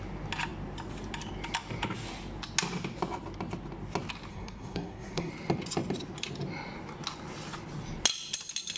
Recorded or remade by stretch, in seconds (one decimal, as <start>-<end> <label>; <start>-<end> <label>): 0.0-4.3 recorded; 4.3-5.3 remade; 5.3-8.8 recorded